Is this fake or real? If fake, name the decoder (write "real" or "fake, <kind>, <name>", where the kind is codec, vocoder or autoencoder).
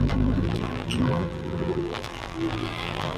fake, vocoder, BigVGAN v2